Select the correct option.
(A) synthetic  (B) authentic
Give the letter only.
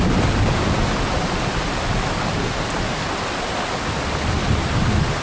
B